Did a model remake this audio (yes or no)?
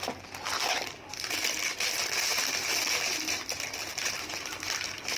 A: no